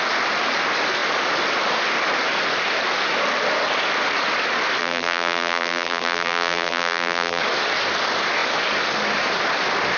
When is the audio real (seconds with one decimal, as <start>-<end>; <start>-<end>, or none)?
0.0-4.8; 7.4-10.0

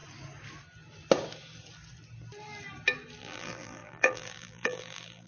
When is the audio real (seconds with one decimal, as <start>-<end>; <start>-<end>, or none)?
0.0-3.2

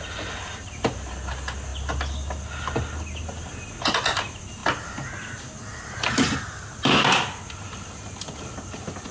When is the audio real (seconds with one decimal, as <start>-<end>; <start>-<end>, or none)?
0.0-9.1

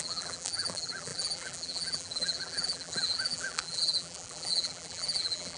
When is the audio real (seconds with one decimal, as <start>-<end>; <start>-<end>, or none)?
none